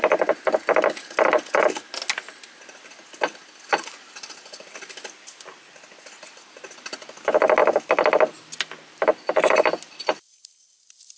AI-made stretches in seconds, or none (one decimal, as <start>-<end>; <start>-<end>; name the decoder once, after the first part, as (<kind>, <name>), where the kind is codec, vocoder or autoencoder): none